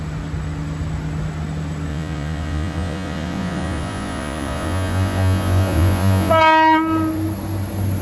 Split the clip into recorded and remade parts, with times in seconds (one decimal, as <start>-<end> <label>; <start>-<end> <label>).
0.0-1.9 recorded; 1.9-6.3 remade; 6.3-8.0 recorded